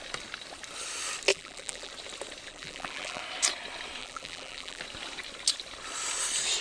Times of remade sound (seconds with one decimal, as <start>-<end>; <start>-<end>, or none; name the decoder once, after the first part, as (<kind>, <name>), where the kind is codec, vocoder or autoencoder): 1.3-1.9 (vocoder, BigVGAN v2); 2.5-3.2; 4.0-4.8